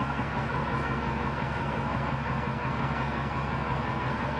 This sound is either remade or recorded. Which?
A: remade